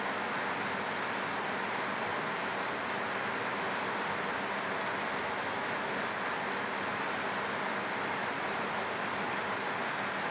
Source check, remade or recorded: recorded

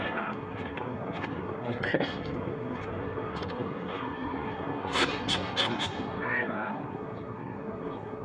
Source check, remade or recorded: remade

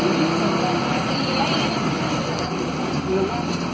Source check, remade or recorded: recorded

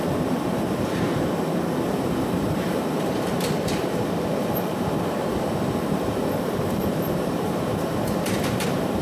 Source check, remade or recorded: remade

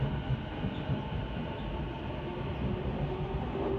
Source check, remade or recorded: recorded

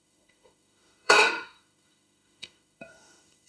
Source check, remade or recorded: remade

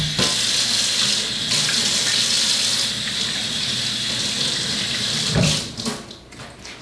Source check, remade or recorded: recorded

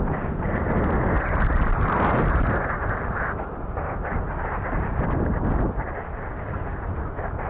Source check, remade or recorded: recorded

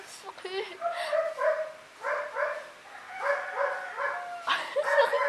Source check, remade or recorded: recorded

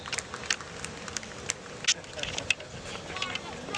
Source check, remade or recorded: recorded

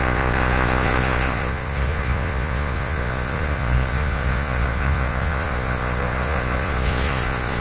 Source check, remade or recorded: remade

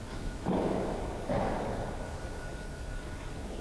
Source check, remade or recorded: remade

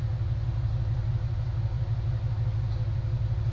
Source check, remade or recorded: recorded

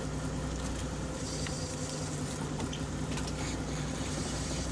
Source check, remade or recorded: remade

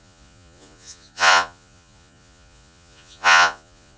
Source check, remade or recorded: remade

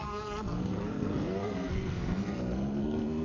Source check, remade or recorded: remade